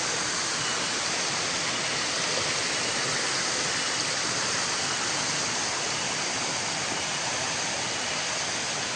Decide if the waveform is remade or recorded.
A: recorded